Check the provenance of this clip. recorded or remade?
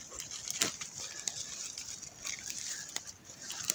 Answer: recorded